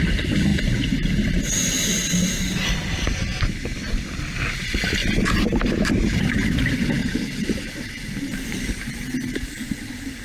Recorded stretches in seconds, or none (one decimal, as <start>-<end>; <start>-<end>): 0.0-7.0; 9.5-10.2